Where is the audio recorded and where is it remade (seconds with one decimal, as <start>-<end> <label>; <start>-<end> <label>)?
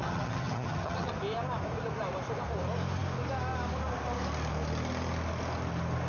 0.0-1.1 remade; 1.1-6.1 recorded